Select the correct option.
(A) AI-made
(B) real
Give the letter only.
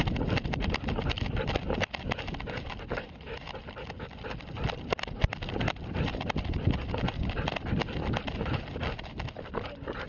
B